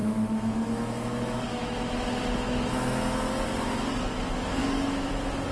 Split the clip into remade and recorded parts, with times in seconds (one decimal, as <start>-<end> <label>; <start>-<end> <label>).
0.0-3.3 remade; 3.3-4.6 recorded; 4.6-5.1 remade; 5.1-5.5 recorded

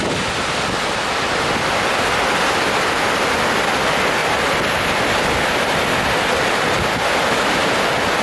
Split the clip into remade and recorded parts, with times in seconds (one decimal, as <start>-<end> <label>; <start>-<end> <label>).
0.0-8.2 recorded

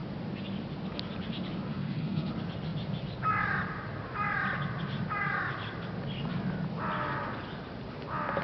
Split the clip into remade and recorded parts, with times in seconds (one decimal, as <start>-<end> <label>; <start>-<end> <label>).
0.0-1.7 recorded; 1.7-2.3 remade; 2.3-8.4 recorded

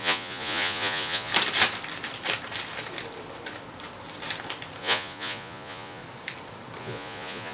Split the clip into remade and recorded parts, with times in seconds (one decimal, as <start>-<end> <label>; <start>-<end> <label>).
0.0-1.3 remade; 1.3-4.8 recorded; 4.8-6.0 remade; 6.0-6.8 recorded; 6.8-7.5 remade

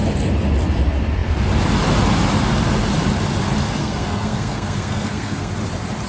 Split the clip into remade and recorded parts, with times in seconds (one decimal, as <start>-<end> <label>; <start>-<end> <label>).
0.0-3.8 recorded; 3.8-5.5 remade; 5.5-6.1 recorded

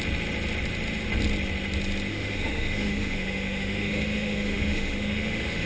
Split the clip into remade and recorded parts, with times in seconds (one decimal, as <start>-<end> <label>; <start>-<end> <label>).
0.0-2.1 recorded; 2.1-5.7 remade